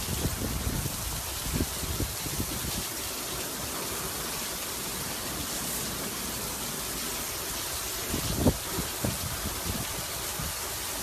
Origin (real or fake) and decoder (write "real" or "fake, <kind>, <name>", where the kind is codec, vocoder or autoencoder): real